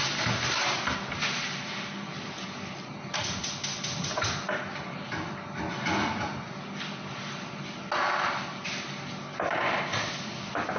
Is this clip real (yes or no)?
yes